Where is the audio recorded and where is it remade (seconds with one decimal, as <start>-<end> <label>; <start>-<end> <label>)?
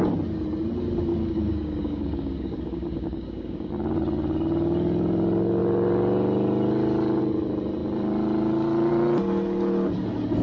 0.0-1.1 recorded; 1.1-3.7 remade; 3.7-10.4 recorded